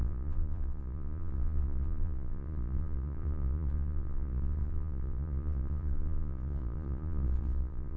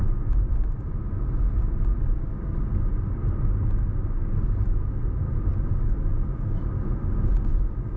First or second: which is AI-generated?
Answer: first